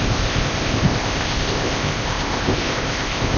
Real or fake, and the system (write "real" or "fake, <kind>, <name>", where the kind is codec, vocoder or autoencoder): fake, codec, ZipCodec